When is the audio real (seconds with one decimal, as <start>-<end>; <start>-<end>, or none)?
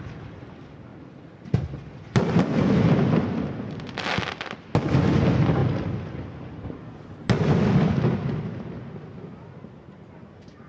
0.0-10.7